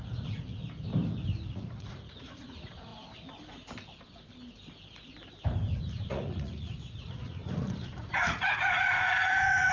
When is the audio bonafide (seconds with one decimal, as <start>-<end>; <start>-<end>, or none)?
0.6-1.5; 2.9-5.8